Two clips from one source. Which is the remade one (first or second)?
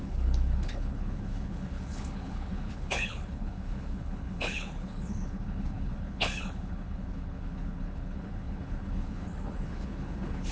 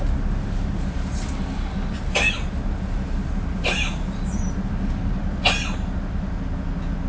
first